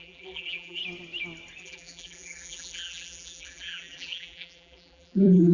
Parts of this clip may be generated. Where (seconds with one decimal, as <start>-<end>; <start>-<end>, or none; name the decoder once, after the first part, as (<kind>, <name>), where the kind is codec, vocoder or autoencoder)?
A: 0.0-0.8 (vocoder, BigVGAN v2); 1.6-5.5